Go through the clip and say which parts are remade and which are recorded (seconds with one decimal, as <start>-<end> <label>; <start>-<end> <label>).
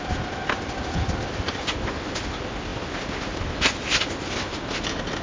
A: 0.0-5.2 recorded